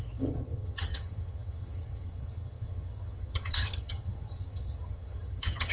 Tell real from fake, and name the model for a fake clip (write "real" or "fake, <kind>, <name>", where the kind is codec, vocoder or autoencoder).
fake, vocoder, HiFi-GAN